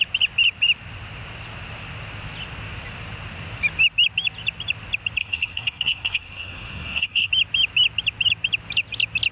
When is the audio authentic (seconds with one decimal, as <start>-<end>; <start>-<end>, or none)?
0.0-5.2; 7.3-9.3